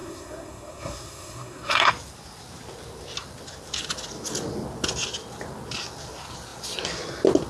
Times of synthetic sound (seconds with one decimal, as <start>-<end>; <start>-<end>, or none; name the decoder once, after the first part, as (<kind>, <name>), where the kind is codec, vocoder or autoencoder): 0.0-1.9 (codec, SNAC)